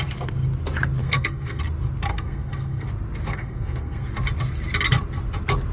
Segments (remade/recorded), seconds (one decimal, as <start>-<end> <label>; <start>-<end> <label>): 0.0-1.0 recorded; 1.0-1.6 remade; 1.6-2.1 recorded; 2.1-2.9 remade; 2.9-3.3 recorded; 3.3-4.1 remade; 4.1-5.7 recorded